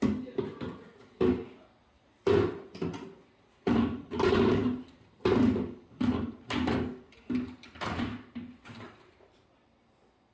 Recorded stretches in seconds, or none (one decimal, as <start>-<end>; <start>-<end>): 0.0-10.3